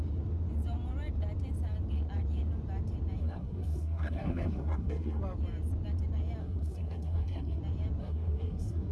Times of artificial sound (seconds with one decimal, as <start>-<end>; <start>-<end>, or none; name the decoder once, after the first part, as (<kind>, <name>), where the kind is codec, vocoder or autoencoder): 3.2-5.2 (codec, SNAC); 6.4-7.6; 8.0-8.9